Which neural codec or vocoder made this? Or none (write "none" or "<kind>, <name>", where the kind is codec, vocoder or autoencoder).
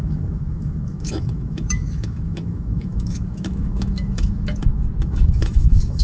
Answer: autoencoder, DAC-VAE